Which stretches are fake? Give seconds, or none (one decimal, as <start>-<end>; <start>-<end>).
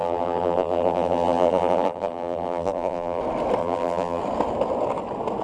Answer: 0.0-3.2; 3.6-4.2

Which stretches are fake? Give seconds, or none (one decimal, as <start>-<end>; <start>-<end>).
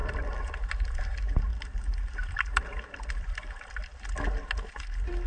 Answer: 0.0-0.5; 1.5-3.7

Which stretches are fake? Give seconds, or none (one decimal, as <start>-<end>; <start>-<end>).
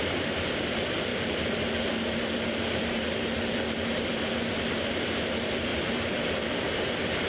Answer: 0.0-7.3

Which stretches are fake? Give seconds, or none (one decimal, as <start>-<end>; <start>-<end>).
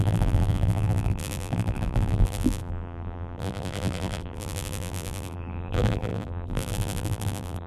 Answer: 0.0-7.7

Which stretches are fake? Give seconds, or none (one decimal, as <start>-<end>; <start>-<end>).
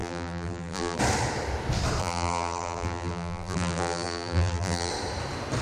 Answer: 0.0-1.0; 2.0-4.9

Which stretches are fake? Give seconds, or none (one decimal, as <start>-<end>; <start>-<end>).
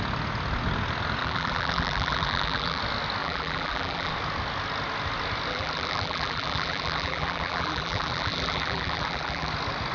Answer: 1.2-2.8; 3.2-4.1; 5.5-9.5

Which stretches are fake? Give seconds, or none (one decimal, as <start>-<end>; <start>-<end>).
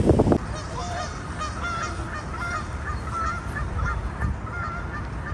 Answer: 0.8-1.4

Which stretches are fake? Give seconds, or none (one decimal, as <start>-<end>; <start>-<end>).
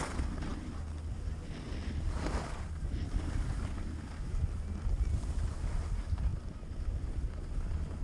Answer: none